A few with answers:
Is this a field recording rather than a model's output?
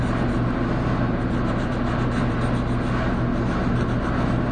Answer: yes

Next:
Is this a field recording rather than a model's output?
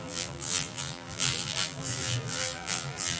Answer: no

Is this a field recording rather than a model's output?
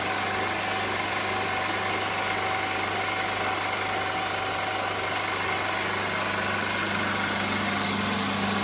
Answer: yes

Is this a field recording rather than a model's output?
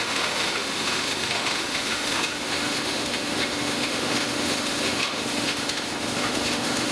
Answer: no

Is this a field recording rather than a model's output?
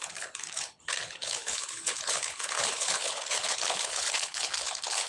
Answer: no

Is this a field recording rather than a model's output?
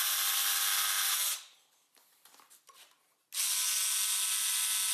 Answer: yes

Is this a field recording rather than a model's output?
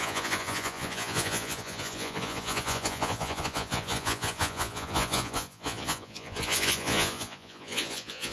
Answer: no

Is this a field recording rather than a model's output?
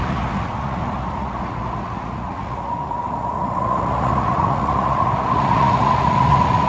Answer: no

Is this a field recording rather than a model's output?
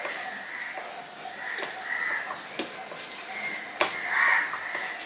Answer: yes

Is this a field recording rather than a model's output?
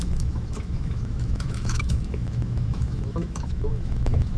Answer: no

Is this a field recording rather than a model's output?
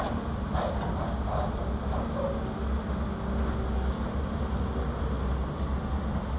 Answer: yes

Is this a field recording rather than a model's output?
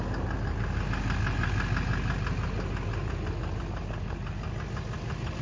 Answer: yes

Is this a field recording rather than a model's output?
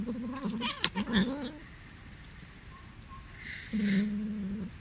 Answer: yes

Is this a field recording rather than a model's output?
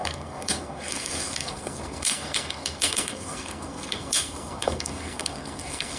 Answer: no